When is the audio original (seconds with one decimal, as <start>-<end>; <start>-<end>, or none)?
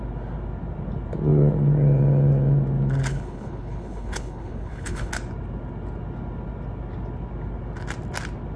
0.0-3.1; 5.1-8.6